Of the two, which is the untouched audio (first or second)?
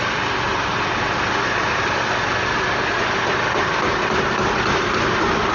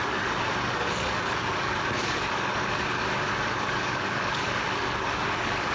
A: first